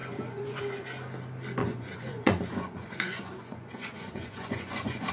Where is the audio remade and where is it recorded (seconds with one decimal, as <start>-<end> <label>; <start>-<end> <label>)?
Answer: 0.0-0.6 remade; 0.6-1.6 recorded; 1.6-5.1 remade